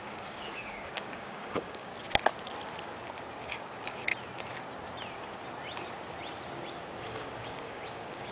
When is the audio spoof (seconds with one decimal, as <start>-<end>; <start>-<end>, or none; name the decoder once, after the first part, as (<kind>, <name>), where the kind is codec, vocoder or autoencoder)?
0.0-1.9 (codec, DAC); 3.4-4.1; 7.0-8.3